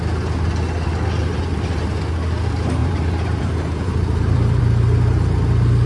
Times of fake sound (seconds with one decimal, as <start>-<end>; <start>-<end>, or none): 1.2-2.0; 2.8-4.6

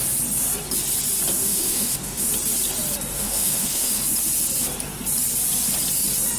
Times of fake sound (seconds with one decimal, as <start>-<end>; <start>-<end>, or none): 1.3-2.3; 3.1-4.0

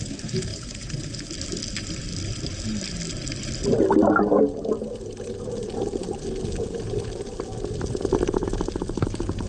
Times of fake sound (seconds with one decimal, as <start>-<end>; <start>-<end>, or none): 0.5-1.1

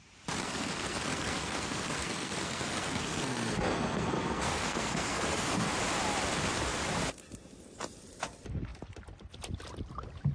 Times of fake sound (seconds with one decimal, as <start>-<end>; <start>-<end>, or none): 0.4-5.7

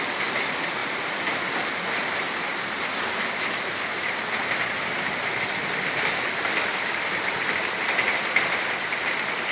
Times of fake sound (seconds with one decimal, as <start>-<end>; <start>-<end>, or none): none

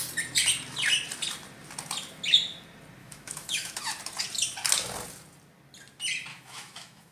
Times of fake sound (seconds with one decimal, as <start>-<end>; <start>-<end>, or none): 3.0-3.8; 6.3-7.1

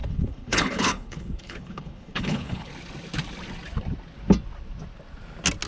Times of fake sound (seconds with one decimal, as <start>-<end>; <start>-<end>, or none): 0.0-2.7